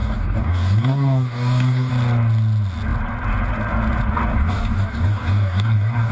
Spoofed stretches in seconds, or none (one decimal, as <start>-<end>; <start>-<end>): 0.0-1.9; 4.3-6.1

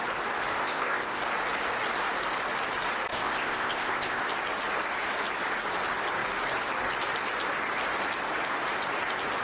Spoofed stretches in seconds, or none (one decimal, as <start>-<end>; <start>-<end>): 0.6-1.2; 3.1-4.2

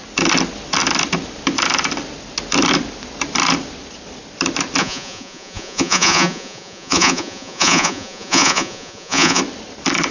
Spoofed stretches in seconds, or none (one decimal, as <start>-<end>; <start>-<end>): 4.8-9.4